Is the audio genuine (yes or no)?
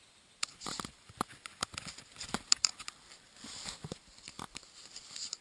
no